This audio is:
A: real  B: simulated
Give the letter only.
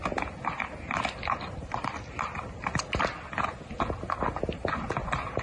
A